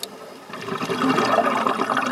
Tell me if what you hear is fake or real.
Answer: real